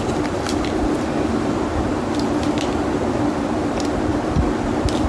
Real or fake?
real